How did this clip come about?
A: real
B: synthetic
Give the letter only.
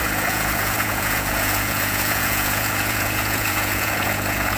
B